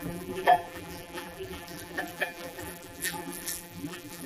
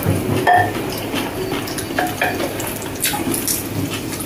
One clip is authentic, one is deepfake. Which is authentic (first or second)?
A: second